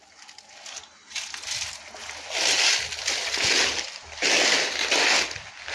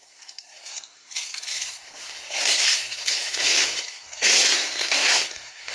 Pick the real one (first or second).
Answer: first